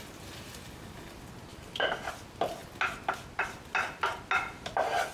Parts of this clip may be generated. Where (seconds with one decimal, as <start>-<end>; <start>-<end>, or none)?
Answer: 1.5-2.1